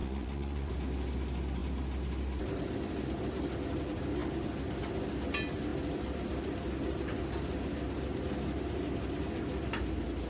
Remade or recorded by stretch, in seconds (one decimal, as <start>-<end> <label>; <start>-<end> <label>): 0.0-0.7 remade; 0.7-10.3 recorded